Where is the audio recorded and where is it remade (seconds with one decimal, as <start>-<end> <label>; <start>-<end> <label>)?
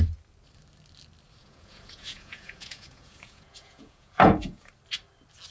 0.0-1.4 recorded; 1.4-4.7 remade; 4.7-5.5 recorded